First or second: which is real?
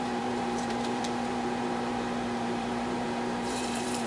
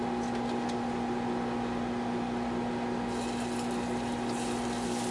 second